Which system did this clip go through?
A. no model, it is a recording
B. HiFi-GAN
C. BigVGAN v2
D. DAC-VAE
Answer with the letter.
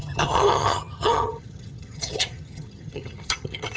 B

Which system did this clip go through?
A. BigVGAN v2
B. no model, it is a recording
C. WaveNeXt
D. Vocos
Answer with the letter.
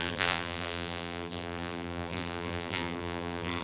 A